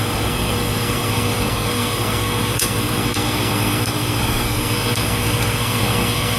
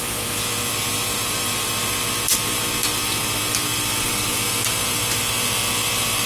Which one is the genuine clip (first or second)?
second